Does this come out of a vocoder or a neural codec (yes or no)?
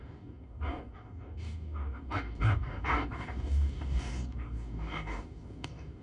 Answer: yes